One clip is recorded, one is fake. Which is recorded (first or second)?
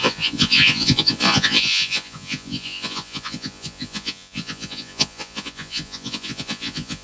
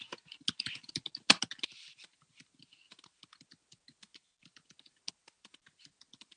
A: second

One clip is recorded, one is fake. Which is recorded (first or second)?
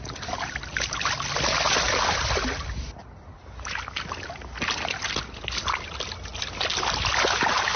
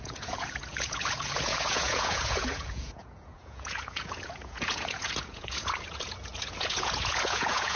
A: first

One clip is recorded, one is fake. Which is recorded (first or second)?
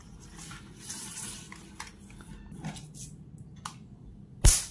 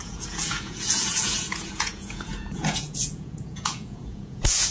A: first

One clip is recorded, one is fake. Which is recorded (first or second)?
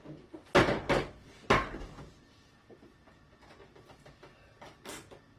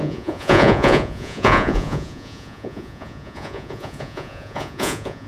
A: first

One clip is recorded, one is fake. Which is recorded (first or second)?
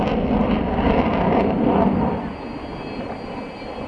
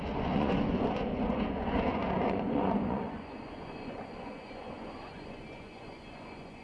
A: first